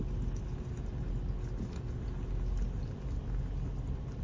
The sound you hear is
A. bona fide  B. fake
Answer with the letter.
A